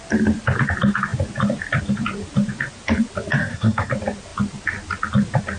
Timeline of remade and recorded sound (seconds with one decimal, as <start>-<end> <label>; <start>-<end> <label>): 0.0-3.4 recorded; 3.4-3.9 remade; 3.9-5.6 recorded